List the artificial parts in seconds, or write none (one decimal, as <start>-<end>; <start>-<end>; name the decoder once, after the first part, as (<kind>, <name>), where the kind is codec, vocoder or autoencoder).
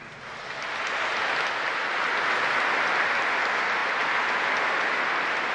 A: none